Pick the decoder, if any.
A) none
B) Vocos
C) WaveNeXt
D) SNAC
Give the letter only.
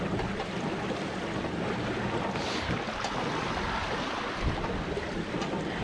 A